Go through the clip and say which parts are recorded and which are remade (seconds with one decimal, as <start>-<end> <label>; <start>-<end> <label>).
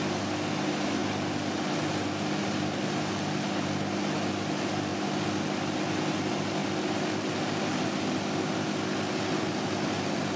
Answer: 0.0-10.4 recorded